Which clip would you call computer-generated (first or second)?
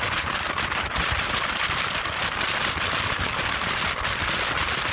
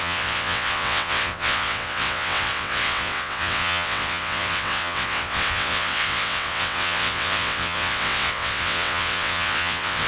second